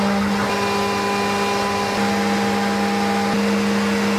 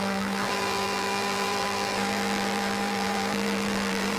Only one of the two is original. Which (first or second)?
first